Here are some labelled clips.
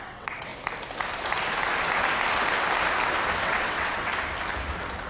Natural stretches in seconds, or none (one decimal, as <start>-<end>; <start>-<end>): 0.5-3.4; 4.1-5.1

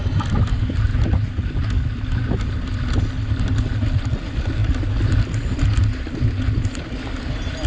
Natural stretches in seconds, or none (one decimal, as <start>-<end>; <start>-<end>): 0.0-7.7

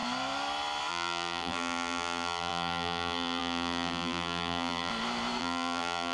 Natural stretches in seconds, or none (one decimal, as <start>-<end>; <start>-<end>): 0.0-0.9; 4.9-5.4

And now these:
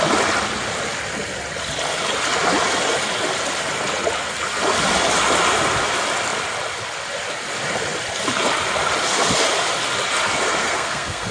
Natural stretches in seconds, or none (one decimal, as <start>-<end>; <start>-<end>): 0.0-10.6

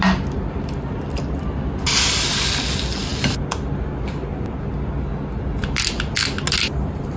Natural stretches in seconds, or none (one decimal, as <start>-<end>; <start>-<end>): 0.0-7.2